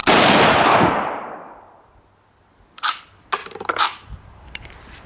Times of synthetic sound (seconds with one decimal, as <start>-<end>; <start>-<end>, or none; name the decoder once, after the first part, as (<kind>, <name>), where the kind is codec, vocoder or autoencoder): 3.4-5.1 (vocoder, BigVGAN v2)